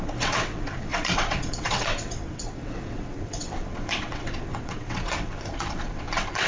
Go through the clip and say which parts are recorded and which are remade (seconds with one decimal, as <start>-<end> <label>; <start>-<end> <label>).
0.0-6.5 remade